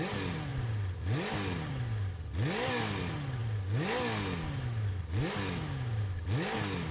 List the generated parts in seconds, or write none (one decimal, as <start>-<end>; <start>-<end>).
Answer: none